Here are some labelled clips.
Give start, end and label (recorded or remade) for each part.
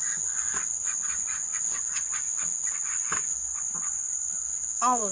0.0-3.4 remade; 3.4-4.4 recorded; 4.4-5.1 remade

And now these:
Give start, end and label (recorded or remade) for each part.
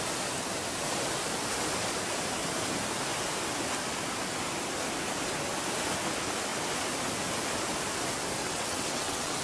0.0-8.4 recorded; 8.4-9.4 remade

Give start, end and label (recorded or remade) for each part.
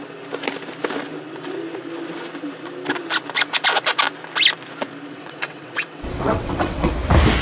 0.0-5.1 recorded; 5.1-6.9 remade; 6.9-7.4 recorded